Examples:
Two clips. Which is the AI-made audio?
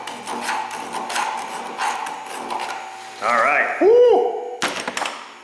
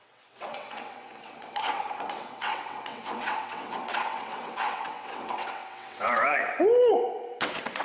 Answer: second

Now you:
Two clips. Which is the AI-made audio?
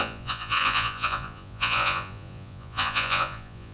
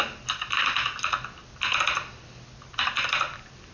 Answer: first